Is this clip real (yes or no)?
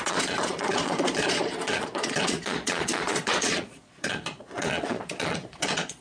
no